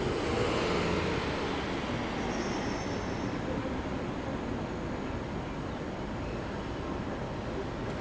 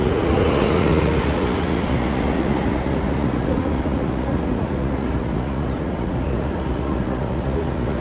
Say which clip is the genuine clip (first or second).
first